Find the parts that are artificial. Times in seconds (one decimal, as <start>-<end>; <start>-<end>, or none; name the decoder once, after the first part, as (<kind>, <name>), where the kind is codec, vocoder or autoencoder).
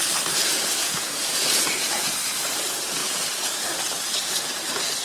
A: 0.4-2.2 (vocoder, Vocos); 3.0-3.6